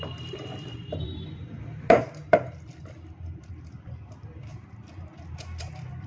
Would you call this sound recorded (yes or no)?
no